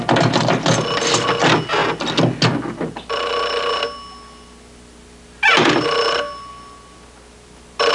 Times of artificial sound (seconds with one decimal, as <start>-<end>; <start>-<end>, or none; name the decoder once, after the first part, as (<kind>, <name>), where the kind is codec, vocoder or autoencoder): none